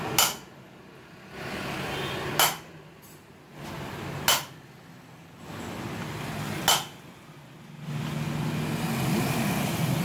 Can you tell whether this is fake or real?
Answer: real